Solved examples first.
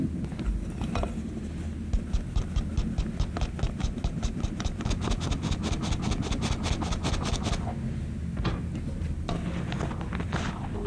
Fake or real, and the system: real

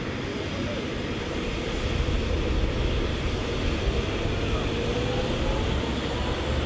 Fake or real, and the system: real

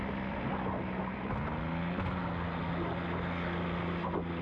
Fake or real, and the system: real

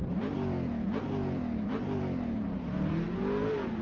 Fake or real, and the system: fake, vocoder, BigVGAN v2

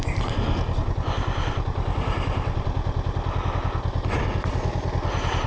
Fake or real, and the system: real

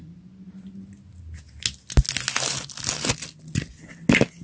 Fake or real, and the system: real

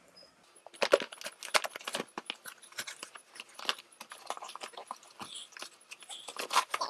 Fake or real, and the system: real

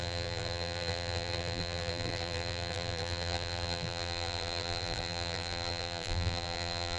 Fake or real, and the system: fake, vocoder, BigVGAN v2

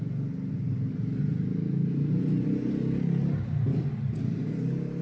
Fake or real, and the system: real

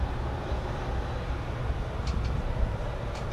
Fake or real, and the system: real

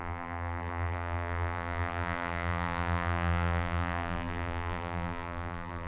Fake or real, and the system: fake, vocoder, BigVGAN v2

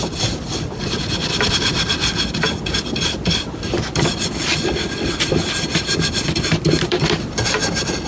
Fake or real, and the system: fake, vocoder, BigVGAN v2